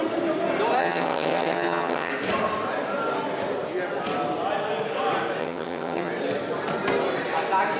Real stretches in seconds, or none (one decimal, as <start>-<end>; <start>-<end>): 0.0-0.8; 2.1-5.4; 6.1-7.8